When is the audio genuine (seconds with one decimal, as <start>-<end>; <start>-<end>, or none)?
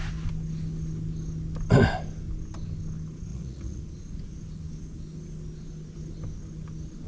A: 0.0-3.3; 3.8-7.1